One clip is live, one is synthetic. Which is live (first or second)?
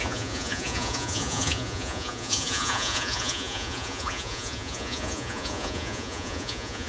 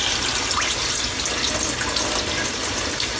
second